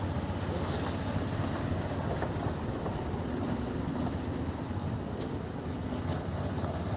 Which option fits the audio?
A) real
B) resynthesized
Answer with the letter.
A